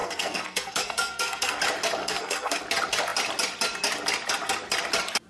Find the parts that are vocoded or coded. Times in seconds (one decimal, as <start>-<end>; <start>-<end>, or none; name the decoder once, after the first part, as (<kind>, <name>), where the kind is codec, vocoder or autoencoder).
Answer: 0.0-1.6 (codec, SNAC); 2.0-2.6